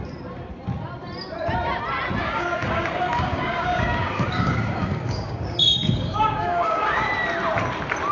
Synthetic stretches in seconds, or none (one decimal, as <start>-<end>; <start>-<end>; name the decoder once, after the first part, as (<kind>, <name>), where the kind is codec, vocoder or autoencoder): 2.2-7.1 (codec, DAC)